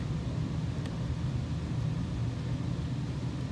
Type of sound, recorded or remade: recorded